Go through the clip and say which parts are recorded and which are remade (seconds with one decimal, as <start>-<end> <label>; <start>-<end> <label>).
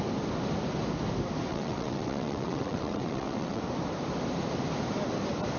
0.0-1.5 recorded; 1.5-3.6 remade; 3.6-5.6 recorded